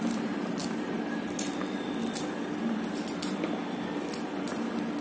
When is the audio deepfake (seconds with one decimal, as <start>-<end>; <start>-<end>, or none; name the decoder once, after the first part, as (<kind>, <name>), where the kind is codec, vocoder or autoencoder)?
none